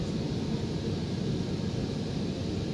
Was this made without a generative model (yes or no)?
yes